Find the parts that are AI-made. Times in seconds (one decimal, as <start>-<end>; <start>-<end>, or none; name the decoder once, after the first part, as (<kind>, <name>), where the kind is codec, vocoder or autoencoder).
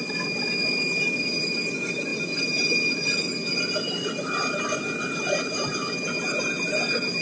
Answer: none